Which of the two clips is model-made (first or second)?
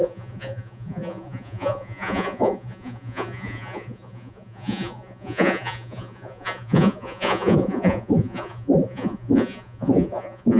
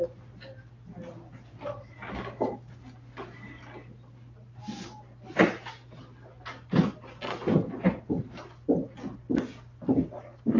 first